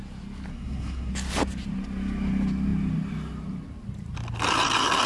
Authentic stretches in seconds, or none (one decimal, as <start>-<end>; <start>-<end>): 0.0-0.5; 1.1-5.1